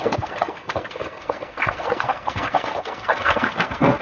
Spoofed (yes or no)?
yes